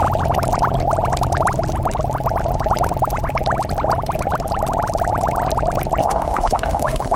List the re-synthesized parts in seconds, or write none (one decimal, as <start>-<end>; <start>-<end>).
6.0-7.2